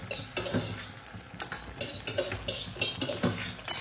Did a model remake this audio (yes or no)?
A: no